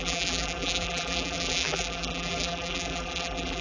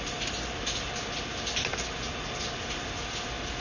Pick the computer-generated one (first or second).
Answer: first